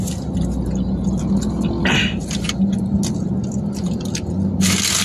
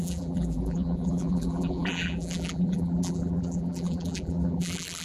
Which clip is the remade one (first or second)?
second